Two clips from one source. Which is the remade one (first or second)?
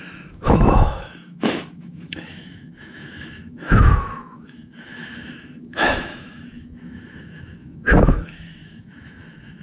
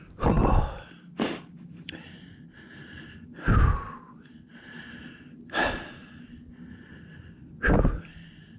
first